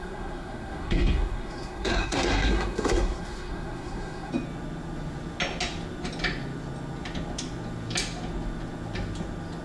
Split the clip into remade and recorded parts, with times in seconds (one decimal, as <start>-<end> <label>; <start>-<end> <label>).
0.0-4.3 remade; 4.3-9.6 recorded